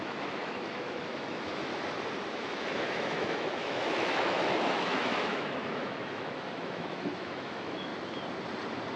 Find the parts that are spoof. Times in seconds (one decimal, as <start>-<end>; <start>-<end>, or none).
0.0-1.7; 2.3-7.9